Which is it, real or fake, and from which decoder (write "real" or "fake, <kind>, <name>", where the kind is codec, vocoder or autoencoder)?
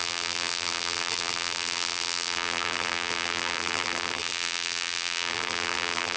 fake, vocoder, BigVGAN v2